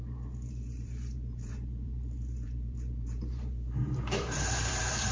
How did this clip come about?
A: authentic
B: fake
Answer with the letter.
B